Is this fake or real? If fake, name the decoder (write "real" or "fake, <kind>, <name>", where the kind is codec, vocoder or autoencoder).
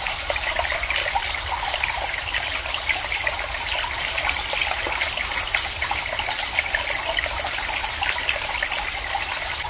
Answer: real